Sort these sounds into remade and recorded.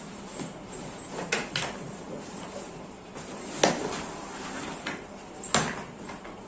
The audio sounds recorded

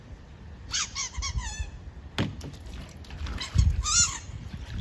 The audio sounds recorded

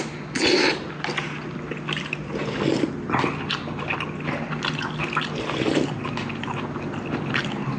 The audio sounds recorded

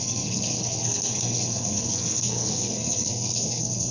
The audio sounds remade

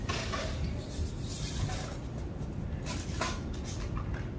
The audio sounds recorded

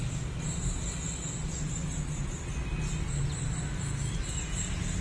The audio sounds recorded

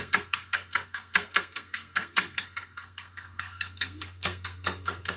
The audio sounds remade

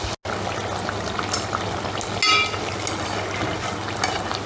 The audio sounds recorded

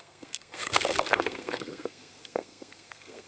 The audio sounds remade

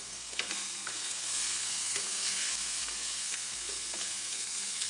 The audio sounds remade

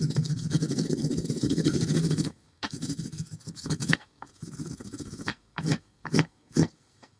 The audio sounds remade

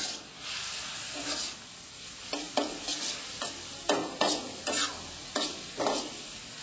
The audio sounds recorded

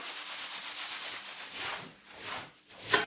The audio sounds recorded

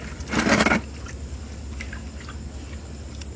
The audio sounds recorded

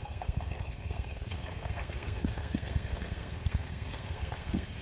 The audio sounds remade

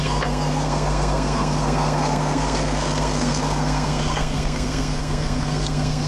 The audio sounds remade